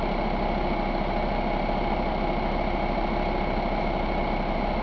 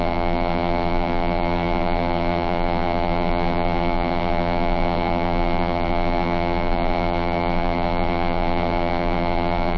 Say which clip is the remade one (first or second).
second